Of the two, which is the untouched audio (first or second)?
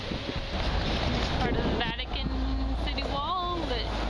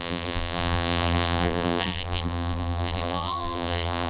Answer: first